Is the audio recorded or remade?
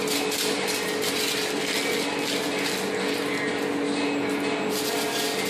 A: recorded